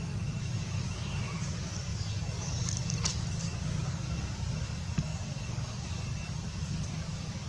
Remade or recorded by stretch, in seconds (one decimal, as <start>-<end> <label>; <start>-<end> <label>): 0.0-7.5 remade

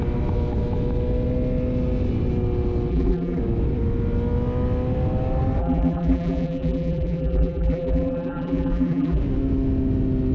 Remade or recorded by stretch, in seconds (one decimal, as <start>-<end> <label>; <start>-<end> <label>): 0.0-2.9 recorded; 2.9-3.4 remade; 3.4-5.6 recorded; 5.6-9.2 remade; 9.2-10.3 recorded